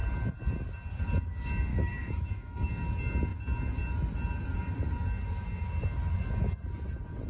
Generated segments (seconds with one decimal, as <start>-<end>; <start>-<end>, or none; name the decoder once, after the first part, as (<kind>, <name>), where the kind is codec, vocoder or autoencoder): 1.7-2.7 (autoencoder, DAC-VAE)